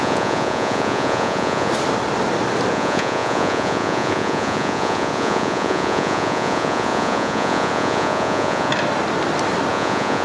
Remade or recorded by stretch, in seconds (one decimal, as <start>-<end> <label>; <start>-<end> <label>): 0.0-1.7 remade; 1.7-2.7 recorded; 2.7-8.7 remade; 8.7-9.7 recorded; 9.7-10.2 remade